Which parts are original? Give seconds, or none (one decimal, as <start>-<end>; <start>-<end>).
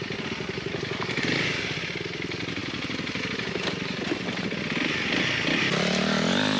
0.0-6.6